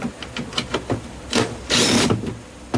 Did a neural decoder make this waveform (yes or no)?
no